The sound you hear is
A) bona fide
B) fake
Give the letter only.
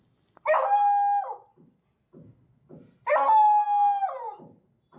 A